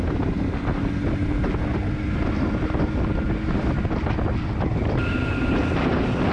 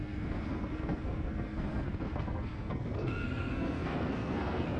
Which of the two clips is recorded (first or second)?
first